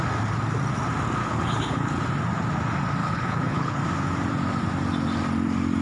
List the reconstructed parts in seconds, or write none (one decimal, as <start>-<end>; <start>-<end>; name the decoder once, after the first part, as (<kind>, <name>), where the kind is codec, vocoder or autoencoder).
1.2-2.0 (codec, HILCodec); 3.0-3.8